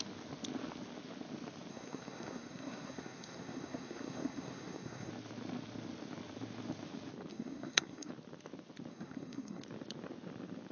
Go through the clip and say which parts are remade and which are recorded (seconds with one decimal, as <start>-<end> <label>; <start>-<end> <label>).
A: 0.0-1.7 recorded; 1.7-5.1 remade; 5.1-7.3 recorded; 7.3-8.1 remade; 8.1-8.9 recorded; 8.9-9.6 remade; 9.6-10.7 recorded